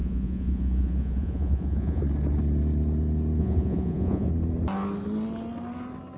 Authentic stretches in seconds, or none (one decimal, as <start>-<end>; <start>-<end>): 2.0-3.4; 4.3-6.2